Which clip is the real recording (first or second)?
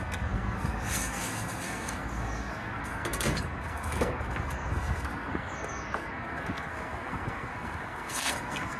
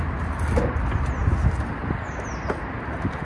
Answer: second